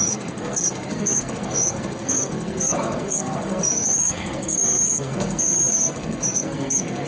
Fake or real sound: fake